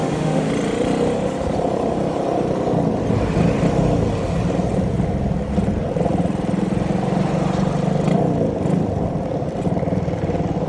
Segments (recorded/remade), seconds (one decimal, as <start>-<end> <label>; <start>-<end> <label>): 0.0-0.5 remade; 0.5-10.7 recorded